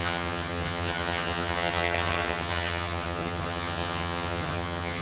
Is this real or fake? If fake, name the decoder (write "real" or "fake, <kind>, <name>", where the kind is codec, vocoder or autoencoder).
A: fake, vocoder, HiFi-GAN